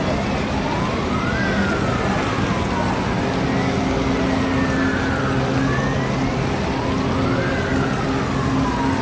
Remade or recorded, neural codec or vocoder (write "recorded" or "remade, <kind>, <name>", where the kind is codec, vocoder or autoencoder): recorded